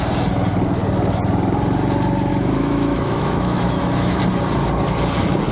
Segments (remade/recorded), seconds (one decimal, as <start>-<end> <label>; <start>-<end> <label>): 0.0-2.3 recorded; 2.3-4.2 remade; 4.2-5.5 recorded